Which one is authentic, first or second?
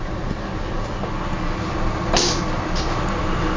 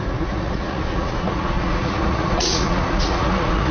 first